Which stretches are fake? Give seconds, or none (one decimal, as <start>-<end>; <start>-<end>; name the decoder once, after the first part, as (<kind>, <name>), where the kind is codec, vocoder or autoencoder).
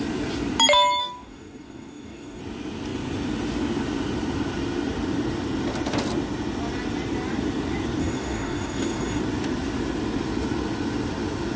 1.0-2.4 (codec, DAC); 8.0-9.2